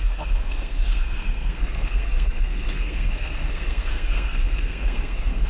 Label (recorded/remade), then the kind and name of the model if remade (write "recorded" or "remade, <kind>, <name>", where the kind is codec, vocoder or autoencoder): remade, codec, SNAC